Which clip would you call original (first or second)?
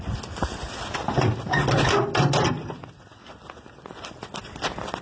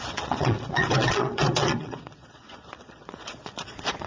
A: first